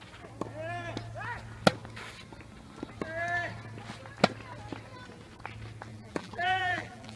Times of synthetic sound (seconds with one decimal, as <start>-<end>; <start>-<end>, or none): 5.9-7.2